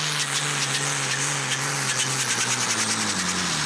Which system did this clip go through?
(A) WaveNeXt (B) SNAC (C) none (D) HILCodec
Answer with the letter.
C